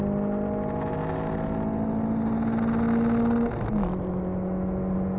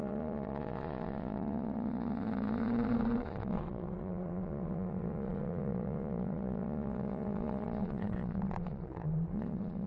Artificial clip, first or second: second